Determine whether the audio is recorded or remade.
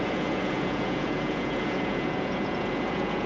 remade